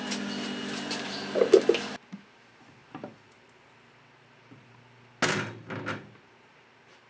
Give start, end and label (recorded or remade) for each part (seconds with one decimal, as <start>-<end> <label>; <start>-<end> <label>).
0.0-7.1 recorded